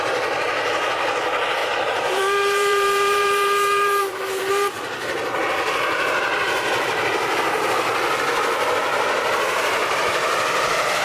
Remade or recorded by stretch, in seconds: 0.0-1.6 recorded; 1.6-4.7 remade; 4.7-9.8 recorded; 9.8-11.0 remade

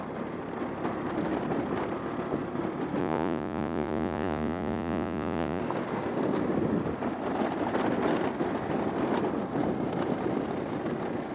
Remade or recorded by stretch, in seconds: 0.0-3.0 recorded; 3.0-5.6 remade; 5.6-11.3 recorded

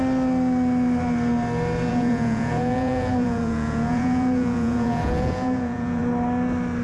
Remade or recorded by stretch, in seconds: 0.0-1.9 recorded; 1.9-6.0 remade; 6.0-6.8 recorded

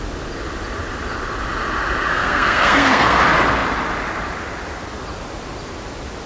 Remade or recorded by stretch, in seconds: 0.0-2.1 recorded; 2.1-3.2 remade; 3.2-6.3 recorded